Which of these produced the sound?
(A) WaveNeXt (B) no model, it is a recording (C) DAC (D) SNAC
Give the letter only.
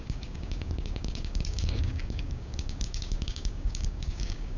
C